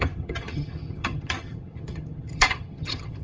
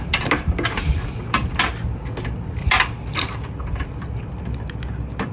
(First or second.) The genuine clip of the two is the second